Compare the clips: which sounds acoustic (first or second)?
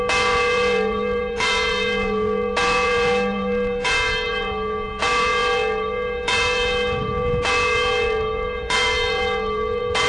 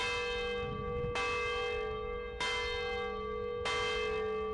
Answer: second